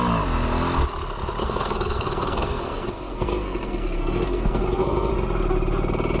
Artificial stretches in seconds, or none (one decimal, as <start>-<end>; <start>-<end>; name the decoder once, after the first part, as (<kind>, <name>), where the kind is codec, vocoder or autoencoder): 1.4-5.1 (codec, SNAC)